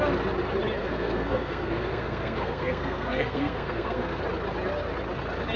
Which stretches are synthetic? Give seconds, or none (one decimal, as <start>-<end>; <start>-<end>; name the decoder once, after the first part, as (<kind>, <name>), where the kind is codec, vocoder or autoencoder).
0.8-4.2 (codec, SNAC)